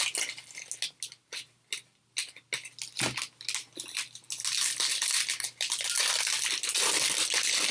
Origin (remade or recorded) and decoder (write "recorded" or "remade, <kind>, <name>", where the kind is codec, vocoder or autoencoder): recorded